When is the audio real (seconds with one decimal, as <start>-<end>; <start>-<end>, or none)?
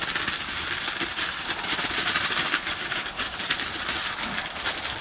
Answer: 0.0-1.1; 4.1-5.0